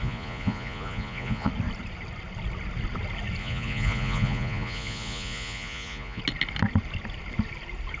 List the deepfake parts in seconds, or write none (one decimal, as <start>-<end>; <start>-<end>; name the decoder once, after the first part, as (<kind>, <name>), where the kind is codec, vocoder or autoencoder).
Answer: 0.0-1.5 (vocoder, Vocos); 3.4-6.2

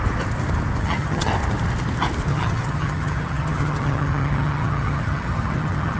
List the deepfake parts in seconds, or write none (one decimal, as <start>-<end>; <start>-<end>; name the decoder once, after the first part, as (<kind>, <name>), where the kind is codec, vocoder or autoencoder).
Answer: 0.8-1.3 (vocoder, HiFi-GAN); 2.3-6.0

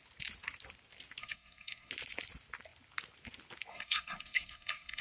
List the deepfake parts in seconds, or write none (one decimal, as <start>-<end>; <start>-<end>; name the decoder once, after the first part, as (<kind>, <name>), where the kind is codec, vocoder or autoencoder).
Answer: 1.2-1.9 (codec, SNAC); 3.7-5.0